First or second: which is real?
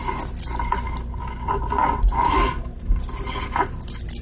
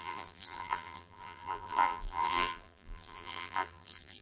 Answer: first